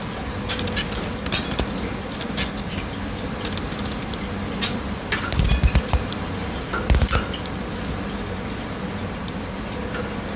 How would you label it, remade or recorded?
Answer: recorded